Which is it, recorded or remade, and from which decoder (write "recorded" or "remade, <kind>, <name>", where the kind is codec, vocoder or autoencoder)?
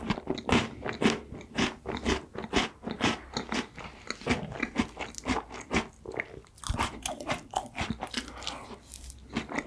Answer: recorded